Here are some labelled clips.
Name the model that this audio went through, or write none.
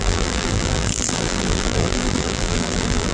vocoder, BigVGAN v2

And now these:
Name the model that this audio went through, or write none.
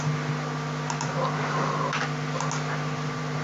none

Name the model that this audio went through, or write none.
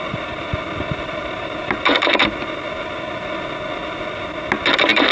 none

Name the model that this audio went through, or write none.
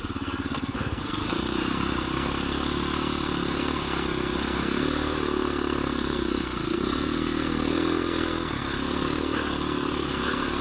codec, SNAC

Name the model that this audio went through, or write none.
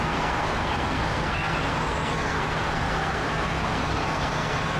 codec, SNAC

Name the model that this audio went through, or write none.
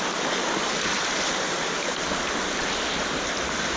none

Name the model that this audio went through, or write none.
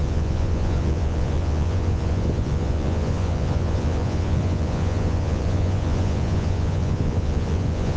vocoder, Vocos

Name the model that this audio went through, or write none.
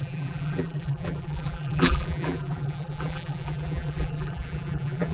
vocoder, BigVGAN v2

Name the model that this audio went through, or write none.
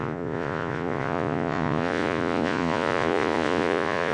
vocoder, Vocos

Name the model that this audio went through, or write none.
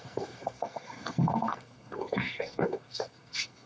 codec, SNAC